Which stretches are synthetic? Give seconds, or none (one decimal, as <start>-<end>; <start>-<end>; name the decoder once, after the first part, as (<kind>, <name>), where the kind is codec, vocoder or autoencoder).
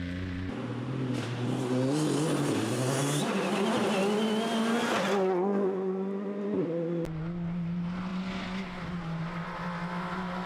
none